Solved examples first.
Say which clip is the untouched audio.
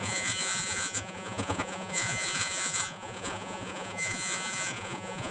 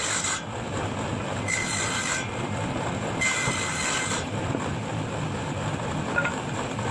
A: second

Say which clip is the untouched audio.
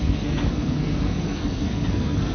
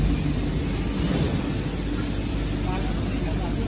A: second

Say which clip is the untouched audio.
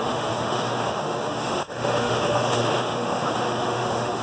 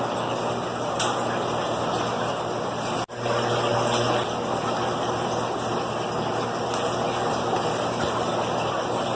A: second